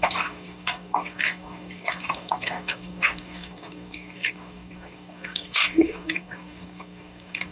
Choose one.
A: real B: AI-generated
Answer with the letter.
B